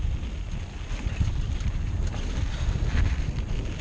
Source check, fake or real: real